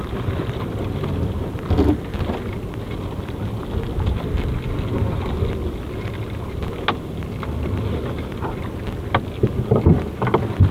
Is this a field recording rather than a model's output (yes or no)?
yes